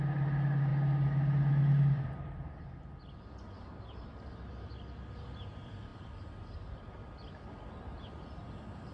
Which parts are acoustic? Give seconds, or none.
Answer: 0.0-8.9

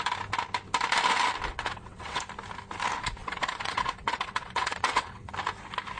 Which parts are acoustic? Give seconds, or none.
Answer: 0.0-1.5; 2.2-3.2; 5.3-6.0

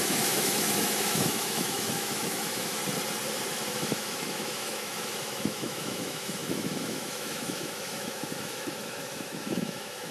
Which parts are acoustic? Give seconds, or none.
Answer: 2.8-3.7

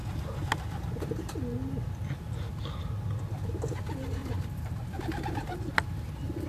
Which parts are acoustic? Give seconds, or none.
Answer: 0.0-4.2; 5.0-6.5

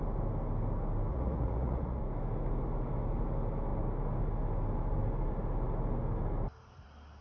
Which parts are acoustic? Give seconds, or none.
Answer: 0.0-1.1; 2.0-7.2

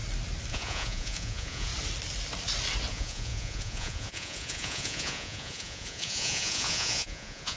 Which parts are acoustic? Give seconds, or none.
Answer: 0.0-0.5; 1.7-2.9

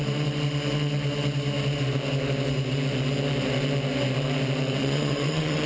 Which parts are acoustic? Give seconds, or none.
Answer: 0.0-4.8